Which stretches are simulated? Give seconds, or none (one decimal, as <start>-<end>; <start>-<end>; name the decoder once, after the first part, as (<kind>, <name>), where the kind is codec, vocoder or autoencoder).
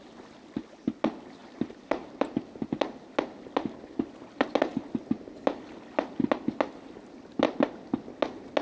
1.4-2.4 (vocoder, BigVGAN v2)